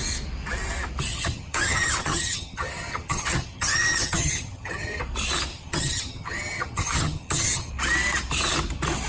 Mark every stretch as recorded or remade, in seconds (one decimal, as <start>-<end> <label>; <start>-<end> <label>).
0.0-1.1 recorded; 1.1-5.0 remade; 5.0-5.5 recorded; 5.5-7.7 remade; 7.7-9.1 recorded